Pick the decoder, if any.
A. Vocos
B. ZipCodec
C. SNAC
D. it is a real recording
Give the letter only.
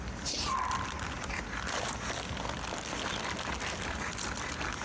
D